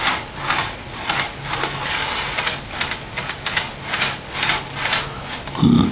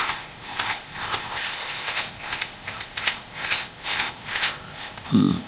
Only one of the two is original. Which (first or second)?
first